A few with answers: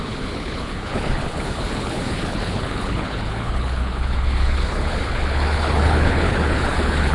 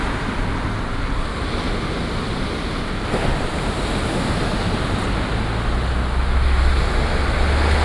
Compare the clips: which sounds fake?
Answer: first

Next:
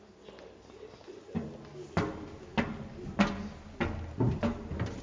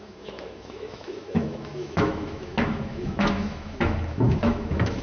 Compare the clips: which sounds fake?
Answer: second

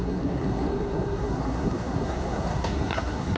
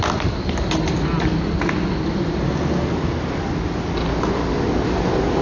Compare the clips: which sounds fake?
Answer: first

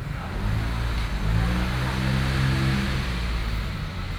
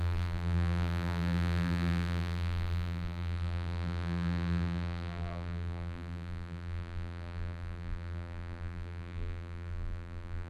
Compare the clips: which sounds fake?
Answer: second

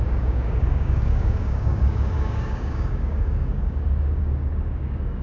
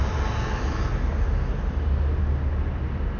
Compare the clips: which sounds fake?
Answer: first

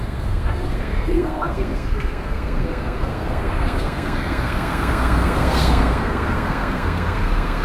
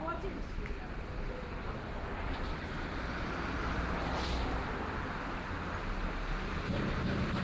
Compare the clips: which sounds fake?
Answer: first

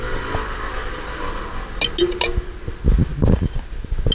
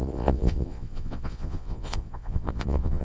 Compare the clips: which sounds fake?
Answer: second